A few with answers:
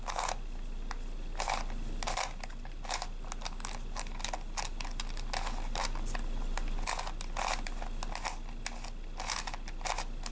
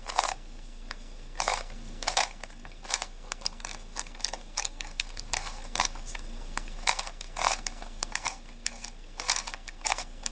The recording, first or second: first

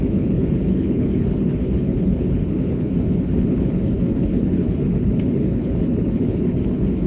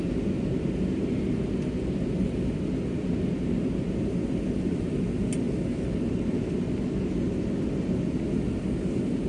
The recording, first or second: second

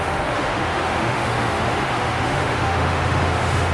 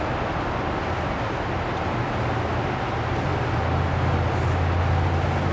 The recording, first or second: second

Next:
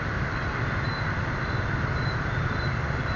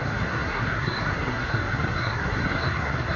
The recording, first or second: first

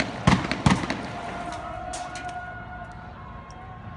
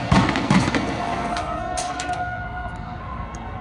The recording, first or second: first